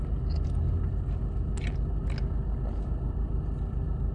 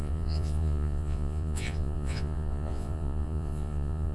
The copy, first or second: second